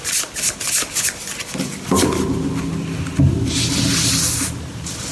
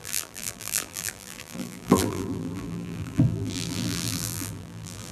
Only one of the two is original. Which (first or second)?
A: first